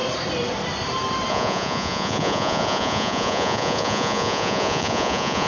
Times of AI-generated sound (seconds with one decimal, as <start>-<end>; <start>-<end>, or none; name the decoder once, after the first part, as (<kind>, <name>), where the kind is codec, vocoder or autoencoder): 1.3-5.5 (vocoder, Vocos)

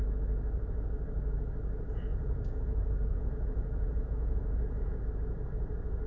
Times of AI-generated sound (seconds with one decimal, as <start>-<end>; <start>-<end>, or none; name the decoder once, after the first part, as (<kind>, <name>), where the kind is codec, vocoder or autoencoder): 2.1-5.0 (vocoder, Vocos)

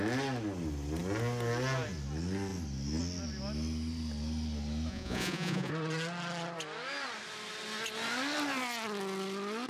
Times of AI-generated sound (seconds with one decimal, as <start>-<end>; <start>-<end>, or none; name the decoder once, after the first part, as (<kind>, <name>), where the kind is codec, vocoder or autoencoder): 4.9-5.7 (vocoder, Vocos)

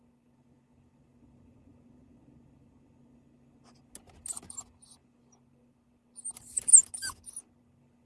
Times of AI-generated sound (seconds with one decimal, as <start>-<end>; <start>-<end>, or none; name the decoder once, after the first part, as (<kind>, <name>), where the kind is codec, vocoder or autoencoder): none

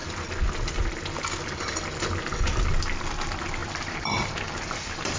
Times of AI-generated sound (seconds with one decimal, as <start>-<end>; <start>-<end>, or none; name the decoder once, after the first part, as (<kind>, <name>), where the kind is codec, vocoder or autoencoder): 3.1-5.2 (vocoder, BigVGAN v2)

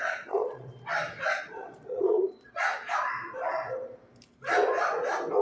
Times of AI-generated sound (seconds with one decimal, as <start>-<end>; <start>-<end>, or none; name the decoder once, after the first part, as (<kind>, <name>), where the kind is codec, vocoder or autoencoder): 0.0-0.7 (vocoder, Vocos); 1.4-2.7